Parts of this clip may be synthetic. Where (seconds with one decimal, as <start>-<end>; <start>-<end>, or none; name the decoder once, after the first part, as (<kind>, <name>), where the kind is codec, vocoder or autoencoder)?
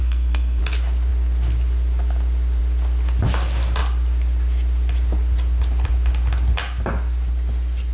0.0-0.6 (codec, SNAC)